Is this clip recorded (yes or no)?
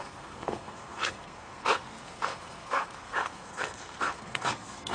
no